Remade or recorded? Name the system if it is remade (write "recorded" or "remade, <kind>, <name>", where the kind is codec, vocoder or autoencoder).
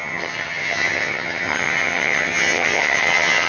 remade, vocoder, HiFi-GAN